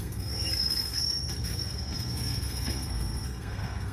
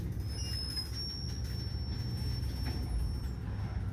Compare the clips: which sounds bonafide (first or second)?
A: second